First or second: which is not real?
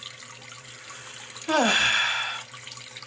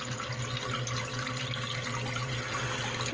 first